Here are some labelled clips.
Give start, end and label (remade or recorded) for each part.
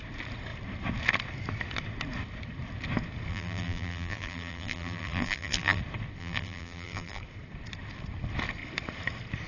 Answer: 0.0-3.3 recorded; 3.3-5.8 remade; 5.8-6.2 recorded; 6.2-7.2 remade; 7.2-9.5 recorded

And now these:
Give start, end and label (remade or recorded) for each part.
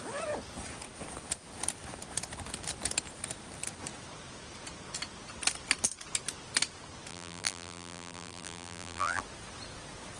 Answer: 0.0-7.1 recorded; 7.1-9.2 remade; 9.2-10.2 recorded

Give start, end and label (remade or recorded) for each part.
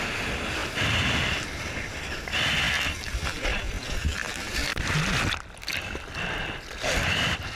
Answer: 0.0-4.1 recorded; 4.1-4.8 remade; 4.8-7.6 recorded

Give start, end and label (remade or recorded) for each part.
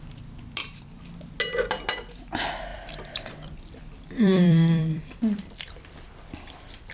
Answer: 0.0-2.7 recorded; 2.7-6.9 remade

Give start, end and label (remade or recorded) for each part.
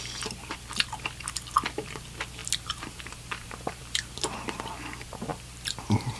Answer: 0.0-2.4 recorded; 2.4-4.1 remade; 4.1-5.3 recorded; 5.3-6.2 remade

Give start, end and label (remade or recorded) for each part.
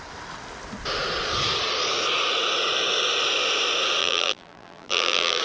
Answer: 0.0-4.0 recorded; 4.0-5.4 remade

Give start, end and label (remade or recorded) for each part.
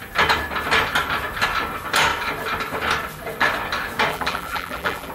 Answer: 0.0-4.1 recorded; 4.1-5.1 remade